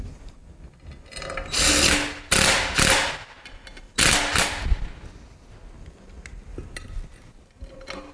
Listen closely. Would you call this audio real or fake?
real